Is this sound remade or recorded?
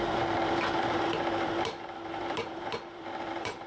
remade